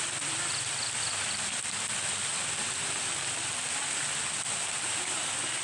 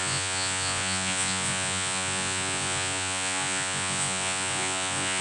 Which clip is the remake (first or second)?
second